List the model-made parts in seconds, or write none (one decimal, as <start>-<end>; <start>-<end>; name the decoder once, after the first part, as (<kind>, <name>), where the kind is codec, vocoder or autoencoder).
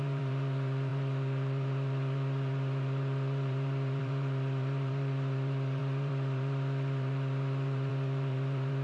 0.0-8.8 (vocoder, BigVGAN v2)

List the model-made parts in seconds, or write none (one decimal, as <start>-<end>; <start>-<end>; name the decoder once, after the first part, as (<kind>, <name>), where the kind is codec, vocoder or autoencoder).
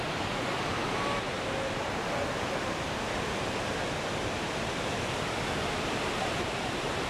0.0-7.1 (vocoder, BigVGAN v2)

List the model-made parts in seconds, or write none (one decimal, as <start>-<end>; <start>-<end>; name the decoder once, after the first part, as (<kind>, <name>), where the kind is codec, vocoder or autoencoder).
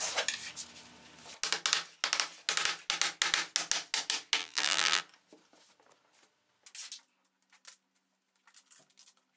4.4-5.0 (vocoder, BigVGAN v2)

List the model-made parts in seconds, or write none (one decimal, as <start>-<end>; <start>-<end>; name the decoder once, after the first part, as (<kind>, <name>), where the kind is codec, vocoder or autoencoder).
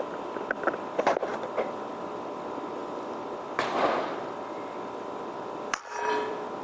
0.0-6.6 (vocoder, BigVGAN v2)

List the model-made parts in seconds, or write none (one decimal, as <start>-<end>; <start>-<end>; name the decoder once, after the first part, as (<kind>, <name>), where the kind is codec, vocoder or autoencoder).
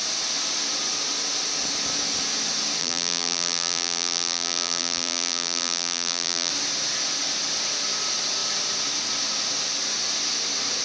2.8-6.5 (vocoder, BigVGAN v2)